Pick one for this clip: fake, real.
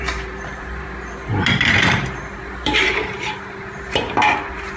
fake